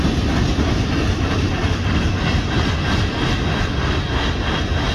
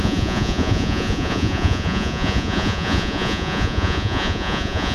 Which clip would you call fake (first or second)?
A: second